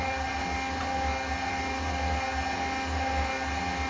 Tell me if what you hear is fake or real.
real